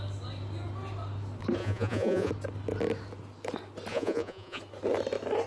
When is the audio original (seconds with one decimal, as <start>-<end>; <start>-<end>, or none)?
0.0-1.6; 2.3-3.9; 4.6-5.5